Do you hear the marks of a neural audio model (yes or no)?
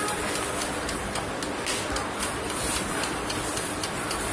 no